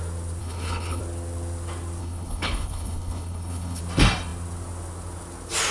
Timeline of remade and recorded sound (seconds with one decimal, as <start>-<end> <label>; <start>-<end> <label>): 0.0-0.4 recorded; 0.4-1.0 remade; 1.0-2.0 recorded; 2.0-3.8 remade; 3.8-5.7 recorded